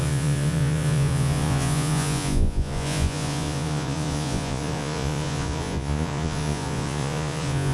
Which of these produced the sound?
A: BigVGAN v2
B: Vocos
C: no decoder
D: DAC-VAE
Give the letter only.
B